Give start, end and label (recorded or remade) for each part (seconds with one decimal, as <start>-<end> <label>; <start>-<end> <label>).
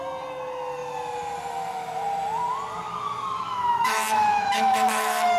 0.0-3.4 recorded; 3.4-5.4 remade